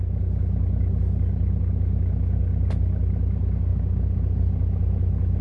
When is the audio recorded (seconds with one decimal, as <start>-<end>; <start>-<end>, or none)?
0.0-5.4